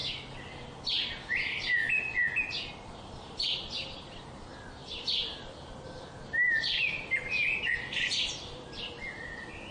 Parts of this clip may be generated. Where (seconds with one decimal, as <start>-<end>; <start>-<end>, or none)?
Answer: none